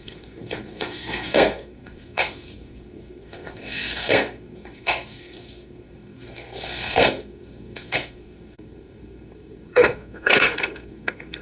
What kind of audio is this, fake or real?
fake